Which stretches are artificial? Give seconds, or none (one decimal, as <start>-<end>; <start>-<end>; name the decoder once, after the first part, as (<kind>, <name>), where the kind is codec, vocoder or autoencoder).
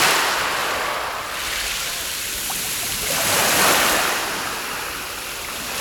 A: none